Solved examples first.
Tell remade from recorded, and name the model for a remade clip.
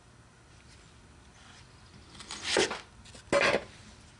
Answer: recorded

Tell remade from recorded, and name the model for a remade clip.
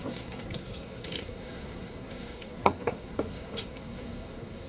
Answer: remade, codec, SNAC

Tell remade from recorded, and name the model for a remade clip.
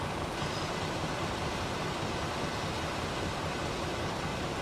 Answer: remade, vocoder, BigVGAN v2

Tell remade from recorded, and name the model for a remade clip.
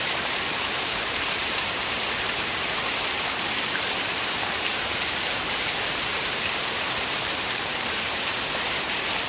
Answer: remade, vocoder, BigVGAN v2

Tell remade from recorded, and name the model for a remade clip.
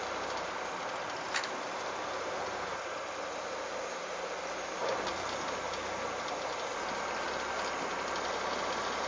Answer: recorded